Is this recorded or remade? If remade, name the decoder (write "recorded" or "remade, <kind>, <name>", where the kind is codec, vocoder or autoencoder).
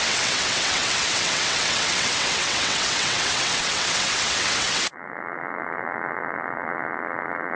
remade, vocoder, WaveNeXt